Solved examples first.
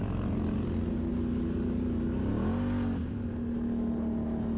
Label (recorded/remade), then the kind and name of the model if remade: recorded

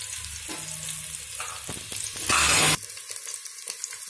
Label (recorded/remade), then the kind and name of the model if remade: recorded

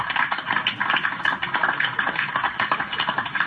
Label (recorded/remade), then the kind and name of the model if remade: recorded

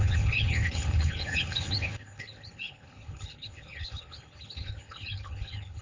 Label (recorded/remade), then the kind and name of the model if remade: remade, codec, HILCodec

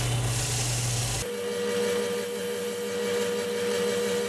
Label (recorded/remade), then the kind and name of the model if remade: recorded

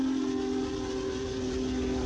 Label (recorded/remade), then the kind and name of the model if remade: recorded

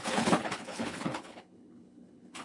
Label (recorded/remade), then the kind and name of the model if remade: remade, codec, HILCodec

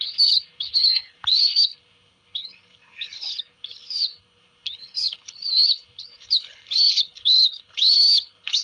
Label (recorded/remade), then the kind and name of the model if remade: remade, codec, HILCodec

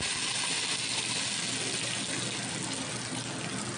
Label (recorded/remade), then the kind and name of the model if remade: recorded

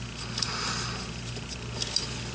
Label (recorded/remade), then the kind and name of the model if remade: recorded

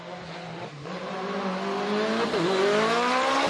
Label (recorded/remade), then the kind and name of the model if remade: recorded